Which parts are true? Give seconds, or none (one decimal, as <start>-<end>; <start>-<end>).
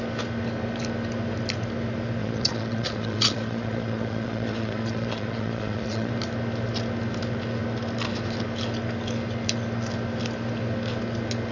0.0-2.2; 6.1-11.5